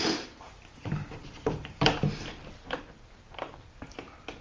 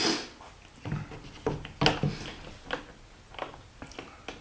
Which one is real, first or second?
second